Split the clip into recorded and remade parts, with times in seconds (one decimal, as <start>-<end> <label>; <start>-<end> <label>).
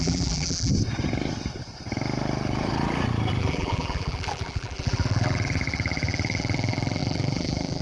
0.0-0.7 remade; 0.7-3.4 recorded; 3.4-7.8 remade